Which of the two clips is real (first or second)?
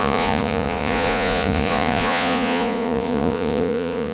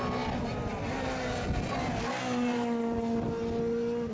second